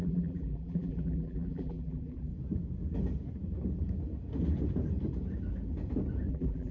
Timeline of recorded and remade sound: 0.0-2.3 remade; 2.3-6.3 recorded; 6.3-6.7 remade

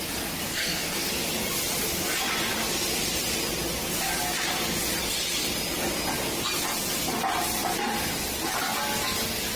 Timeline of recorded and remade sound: 0.0-0.4 recorded; 0.4-1.1 remade; 1.1-9.6 recorded